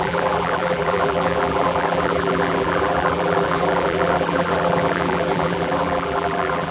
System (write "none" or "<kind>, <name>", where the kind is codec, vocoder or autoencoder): vocoder, BigVGAN v2